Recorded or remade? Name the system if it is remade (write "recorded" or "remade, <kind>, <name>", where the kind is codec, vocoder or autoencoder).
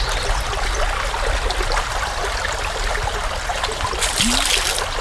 recorded